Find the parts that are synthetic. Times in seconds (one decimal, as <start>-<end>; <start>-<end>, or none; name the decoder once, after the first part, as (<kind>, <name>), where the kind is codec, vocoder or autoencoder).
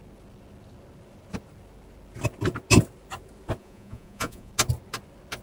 3.6-4.5 (vocoder, Vocos)